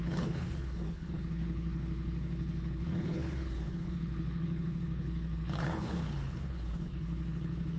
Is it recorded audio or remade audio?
remade